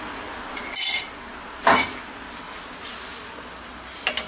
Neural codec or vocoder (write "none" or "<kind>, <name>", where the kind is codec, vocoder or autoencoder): none